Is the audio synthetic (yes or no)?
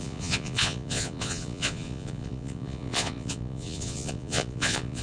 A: yes